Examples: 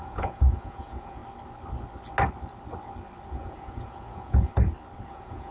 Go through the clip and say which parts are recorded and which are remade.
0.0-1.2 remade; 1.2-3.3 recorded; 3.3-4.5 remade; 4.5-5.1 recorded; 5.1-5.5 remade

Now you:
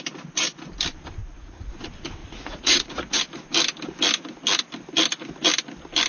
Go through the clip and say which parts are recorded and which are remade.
0.0-1.2 recorded; 1.2-1.7 remade; 1.7-2.2 recorded; 2.2-3.2 remade; 3.2-6.1 recorded

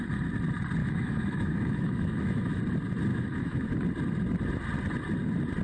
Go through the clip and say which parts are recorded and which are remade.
0.0-0.8 recorded; 0.8-2.6 remade; 2.6-3.1 recorded; 3.1-3.7 remade; 3.7-5.6 recorded

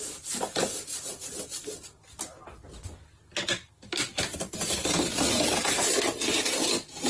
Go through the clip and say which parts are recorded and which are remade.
0.0-7.1 recorded

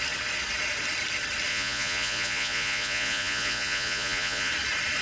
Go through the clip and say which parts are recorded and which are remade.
0.0-1.5 recorded; 1.5-4.5 remade; 4.5-5.0 recorded